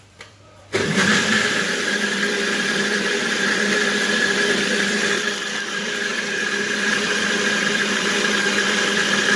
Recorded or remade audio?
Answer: remade